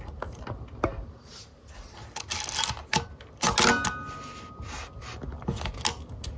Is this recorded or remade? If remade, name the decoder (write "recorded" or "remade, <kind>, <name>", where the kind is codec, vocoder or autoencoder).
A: recorded